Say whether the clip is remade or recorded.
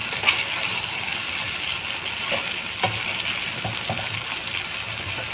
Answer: recorded